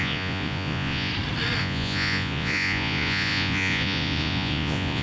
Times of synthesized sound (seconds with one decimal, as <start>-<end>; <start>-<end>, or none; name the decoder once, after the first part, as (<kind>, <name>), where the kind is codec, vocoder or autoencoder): 0.0-1.1 (vocoder, Vocos); 1.6-5.0

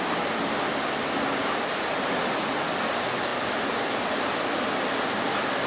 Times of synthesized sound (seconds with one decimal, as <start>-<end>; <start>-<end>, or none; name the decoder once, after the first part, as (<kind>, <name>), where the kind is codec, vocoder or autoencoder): 1.4-2.3 (vocoder, BigVGAN v2); 3.3-4.7

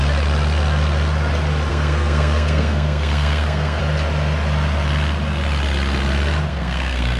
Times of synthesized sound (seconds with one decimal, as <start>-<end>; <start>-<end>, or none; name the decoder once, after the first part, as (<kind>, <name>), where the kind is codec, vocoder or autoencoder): 1.7-3.8 (codec, SNAC); 6.5-7.2

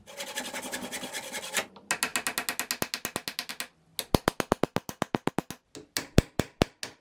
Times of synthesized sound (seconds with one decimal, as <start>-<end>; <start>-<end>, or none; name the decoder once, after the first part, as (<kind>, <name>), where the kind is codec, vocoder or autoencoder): 0.8-1.3 (vocoder, BigVGAN v2)

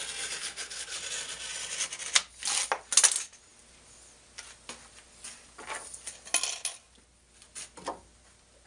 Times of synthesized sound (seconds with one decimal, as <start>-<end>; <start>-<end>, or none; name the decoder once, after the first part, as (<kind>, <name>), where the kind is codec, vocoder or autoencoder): 0.4-1.0 (codec, HILCodec)